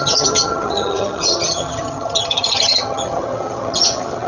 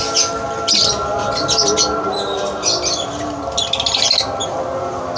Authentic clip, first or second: second